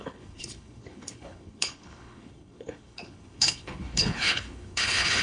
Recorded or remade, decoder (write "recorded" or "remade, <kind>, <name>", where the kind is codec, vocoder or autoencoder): remade, codec, HILCodec